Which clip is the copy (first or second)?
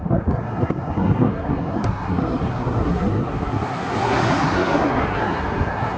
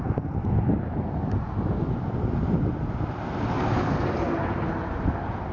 first